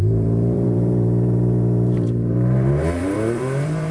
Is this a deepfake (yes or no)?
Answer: yes